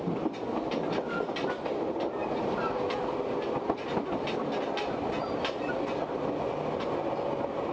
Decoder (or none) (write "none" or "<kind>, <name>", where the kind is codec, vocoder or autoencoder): none